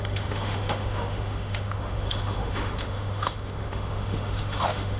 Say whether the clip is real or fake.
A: fake